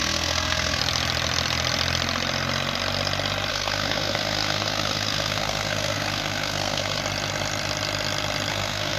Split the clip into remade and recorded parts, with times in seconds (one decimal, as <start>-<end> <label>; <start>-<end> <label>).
0.0-0.8 remade; 0.8-3.5 recorded; 3.5-7.0 remade; 7.0-8.5 recorded; 8.5-9.0 remade